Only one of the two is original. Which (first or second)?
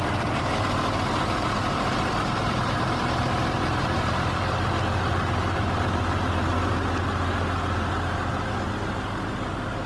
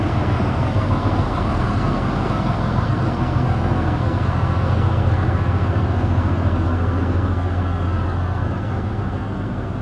first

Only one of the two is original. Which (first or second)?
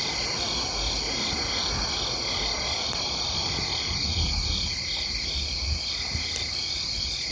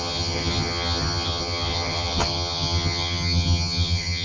first